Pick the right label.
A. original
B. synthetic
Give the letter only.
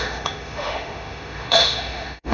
B